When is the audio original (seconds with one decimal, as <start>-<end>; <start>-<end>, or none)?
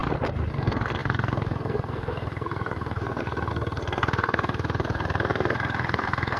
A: 0.0-0.5